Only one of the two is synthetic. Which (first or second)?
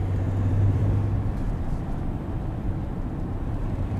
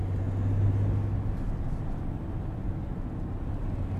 first